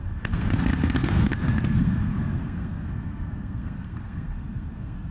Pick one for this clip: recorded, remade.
remade